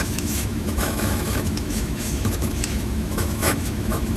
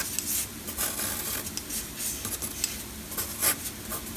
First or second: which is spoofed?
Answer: first